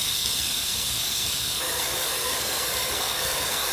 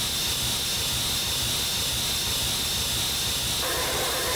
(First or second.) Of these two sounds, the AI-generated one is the first